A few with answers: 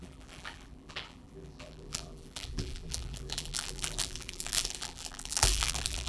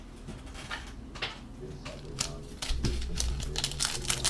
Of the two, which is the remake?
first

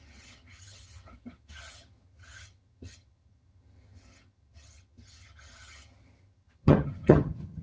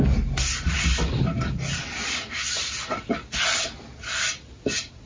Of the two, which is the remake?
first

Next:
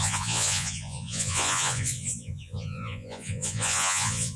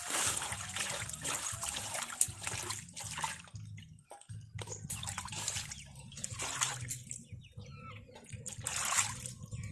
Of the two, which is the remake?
first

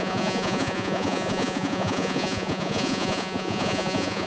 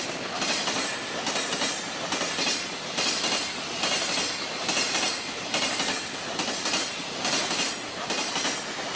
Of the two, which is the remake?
first